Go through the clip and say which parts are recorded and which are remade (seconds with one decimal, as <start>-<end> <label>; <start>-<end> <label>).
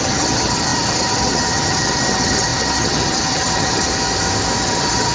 0.0-3.9 remade; 3.9-4.6 recorded; 4.6-5.1 remade